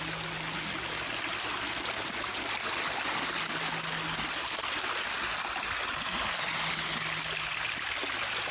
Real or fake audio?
real